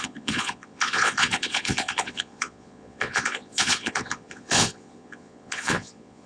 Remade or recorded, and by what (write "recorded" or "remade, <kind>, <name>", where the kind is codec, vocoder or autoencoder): remade, vocoder, Vocos